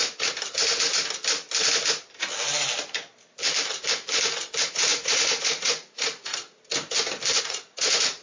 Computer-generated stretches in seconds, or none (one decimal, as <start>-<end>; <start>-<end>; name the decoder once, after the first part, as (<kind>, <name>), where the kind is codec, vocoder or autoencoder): 4.7-6.3 (vocoder, Vocos); 7.4-8.2